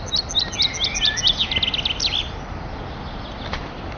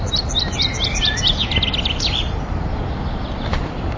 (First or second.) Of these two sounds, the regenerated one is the second